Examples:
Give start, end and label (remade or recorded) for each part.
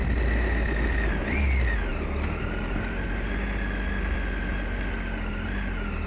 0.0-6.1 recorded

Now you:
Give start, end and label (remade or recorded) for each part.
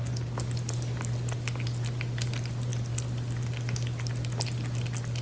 0.0-5.2 recorded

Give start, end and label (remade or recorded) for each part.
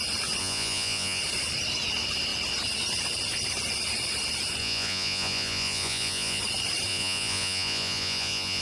0.0-0.4 recorded; 0.4-1.2 remade; 1.2-4.6 recorded; 4.6-6.4 remade; 6.4-6.9 recorded; 6.9-8.6 remade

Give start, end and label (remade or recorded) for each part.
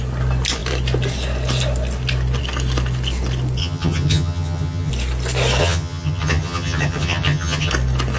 0.0-3.6 recorded; 3.6-4.9 remade; 4.9-5.6 recorded; 5.6-7.7 remade; 7.7-8.2 recorded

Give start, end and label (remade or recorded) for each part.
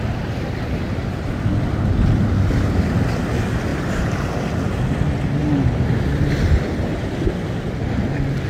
0.0-1.0 recorded; 1.0-1.5 remade; 1.5-3.7 recorded; 3.7-4.3 remade; 4.3-5.4 recorded; 5.4-6.0 remade; 6.0-8.5 recorded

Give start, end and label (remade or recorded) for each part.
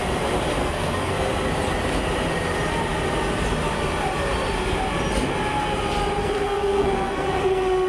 0.0-0.6 recorded; 0.6-1.1 remade; 1.1-6.2 recorded; 6.2-7.9 remade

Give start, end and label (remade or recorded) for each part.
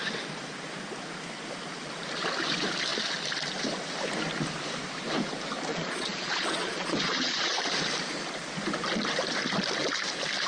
0.0-5.7 recorded; 5.7-7.6 remade; 7.6-10.5 recorded